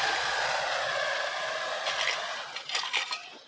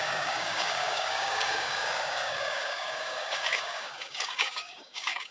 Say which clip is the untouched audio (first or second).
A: first